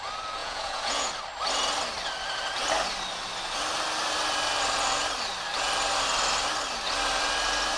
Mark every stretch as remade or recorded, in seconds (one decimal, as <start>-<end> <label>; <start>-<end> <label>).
0.0-0.4 recorded; 0.4-1.1 remade; 1.1-7.8 recorded